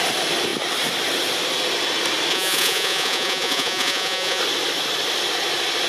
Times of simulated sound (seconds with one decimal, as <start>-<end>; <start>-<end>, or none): 2.3-4.4